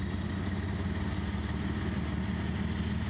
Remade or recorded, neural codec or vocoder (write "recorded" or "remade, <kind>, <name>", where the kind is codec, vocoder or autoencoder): recorded